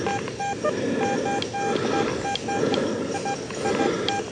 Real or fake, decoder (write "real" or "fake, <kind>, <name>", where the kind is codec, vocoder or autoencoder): real